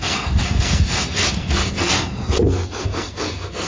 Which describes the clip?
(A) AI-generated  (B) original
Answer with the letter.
A